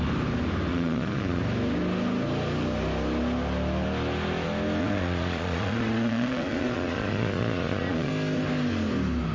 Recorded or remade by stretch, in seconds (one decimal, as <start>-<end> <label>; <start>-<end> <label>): 0.0-0.7 recorded; 0.7-1.4 remade; 1.4-4.8 recorded; 4.8-8.1 remade; 8.1-9.3 recorded